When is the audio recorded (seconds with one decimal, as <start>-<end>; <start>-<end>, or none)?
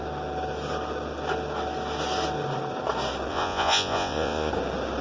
0.0-3.3; 4.5-5.0